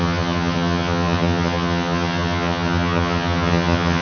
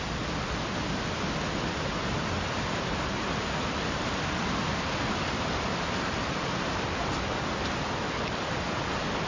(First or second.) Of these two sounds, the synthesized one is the first